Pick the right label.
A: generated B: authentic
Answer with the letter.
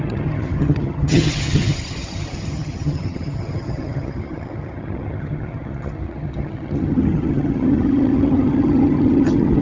A